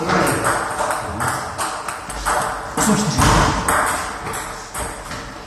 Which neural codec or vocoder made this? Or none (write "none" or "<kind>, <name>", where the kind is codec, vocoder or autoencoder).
none